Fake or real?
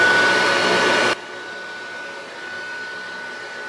real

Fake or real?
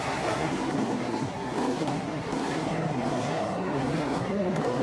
fake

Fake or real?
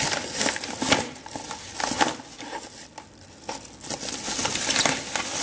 real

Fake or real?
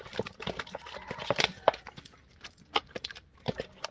real